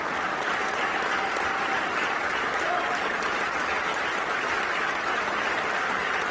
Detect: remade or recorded recorded